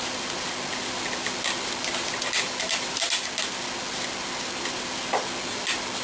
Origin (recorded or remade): recorded